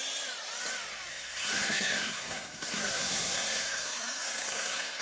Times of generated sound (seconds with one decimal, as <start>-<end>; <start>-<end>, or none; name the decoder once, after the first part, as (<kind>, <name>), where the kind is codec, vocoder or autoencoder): 1.1-5.0 (codec, SNAC)